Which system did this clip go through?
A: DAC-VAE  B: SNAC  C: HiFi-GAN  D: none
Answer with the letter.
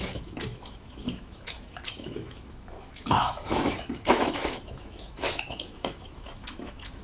A